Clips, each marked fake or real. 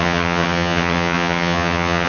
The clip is fake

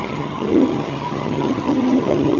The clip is fake